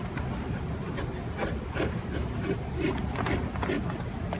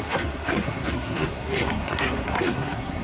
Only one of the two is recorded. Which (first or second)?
first